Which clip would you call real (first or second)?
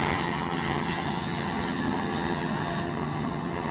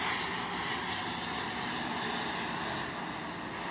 second